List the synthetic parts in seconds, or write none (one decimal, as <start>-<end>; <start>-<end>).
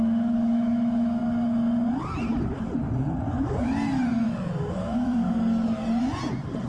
0.0-1.2; 4.7-5.3